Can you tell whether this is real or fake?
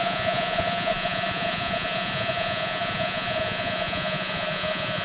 fake